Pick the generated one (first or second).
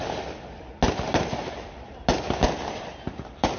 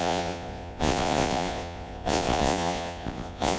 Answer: second